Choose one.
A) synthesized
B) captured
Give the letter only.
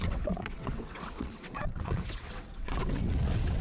A